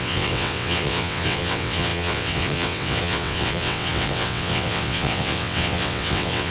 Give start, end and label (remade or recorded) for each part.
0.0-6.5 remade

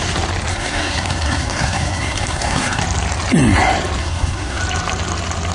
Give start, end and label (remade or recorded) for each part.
0.0-0.5 recorded; 0.5-2.8 remade; 2.8-4.0 recorded; 4.0-4.6 remade; 4.6-5.5 recorded

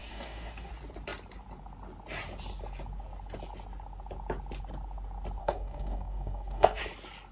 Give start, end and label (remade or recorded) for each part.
0.0-0.7 remade; 0.7-5.4 recorded; 5.4-6.8 remade; 6.8-7.3 recorded

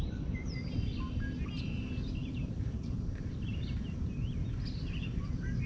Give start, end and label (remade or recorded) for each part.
0.0-2.2 recorded; 2.2-5.7 remade

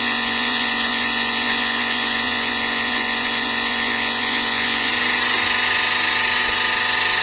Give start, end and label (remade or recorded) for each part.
0.0-4.9 remade; 4.9-7.2 recorded

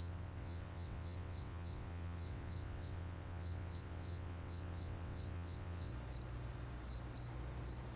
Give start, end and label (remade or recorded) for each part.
0.0-5.9 remade; 5.9-8.0 recorded

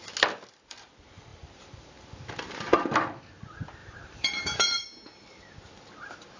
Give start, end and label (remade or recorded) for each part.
0.0-1.3 recorded; 1.3-1.9 remade; 1.9-3.8 recorded; 3.8-5.6 remade; 5.6-6.4 recorded

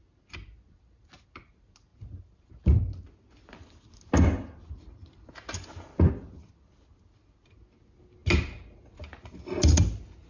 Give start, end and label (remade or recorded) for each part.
0.0-10.3 recorded